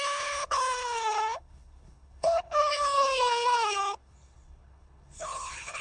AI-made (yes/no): yes